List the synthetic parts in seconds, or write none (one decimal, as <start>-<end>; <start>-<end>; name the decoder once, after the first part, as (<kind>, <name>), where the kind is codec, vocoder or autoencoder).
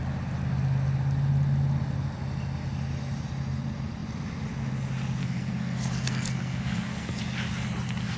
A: 5.2-7.2 (codec, SNAC)